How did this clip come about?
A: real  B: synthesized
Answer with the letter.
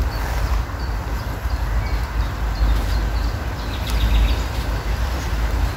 A